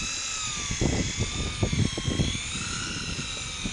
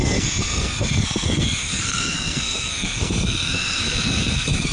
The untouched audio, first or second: first